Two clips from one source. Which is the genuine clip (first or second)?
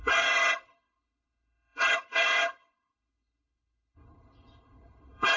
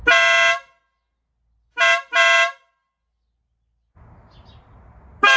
second